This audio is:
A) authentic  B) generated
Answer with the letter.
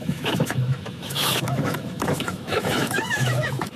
B